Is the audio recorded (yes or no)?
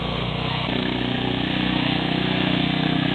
no